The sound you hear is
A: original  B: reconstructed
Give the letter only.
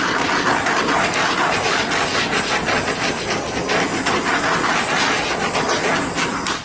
A